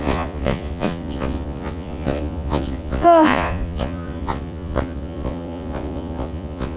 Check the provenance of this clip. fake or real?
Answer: fake